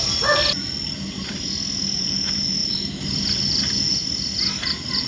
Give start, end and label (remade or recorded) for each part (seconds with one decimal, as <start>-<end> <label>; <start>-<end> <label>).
0.0-5.1 recorded